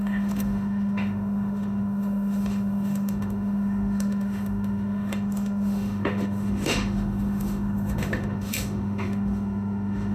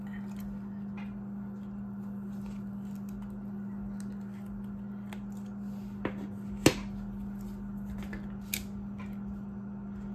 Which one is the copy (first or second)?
first